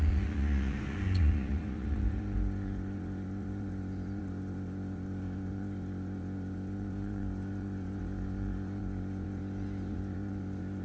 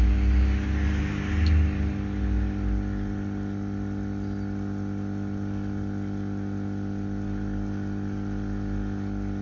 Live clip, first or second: second